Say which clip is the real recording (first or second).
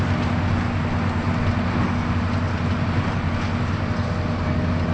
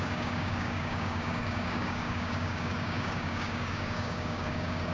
first